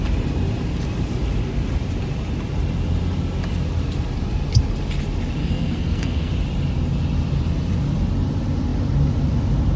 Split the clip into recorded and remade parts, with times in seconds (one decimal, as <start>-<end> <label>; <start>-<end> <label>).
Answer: 0.0-5.4 recorded; 5.4-6.3 remade; 6.3-9.8 recorded